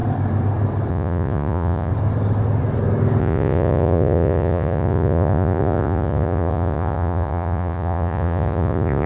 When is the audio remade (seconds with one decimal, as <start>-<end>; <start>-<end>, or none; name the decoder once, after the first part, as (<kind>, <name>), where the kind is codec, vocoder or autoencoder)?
0.9-1.9 (vocoder, Vocos); 3.2-9.1